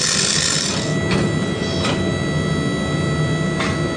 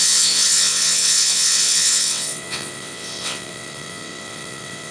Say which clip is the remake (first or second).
second